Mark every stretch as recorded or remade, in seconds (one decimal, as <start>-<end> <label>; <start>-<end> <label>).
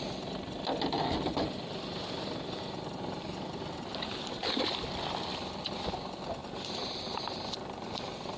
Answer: 0.0-1.3 recorded; 1.3-3.5 remade; 3.5-6.4 recorded; 6.4-7.0 remade; 7.0-8.4 recorded